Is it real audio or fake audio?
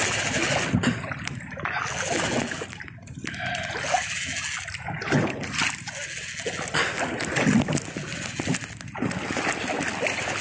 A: real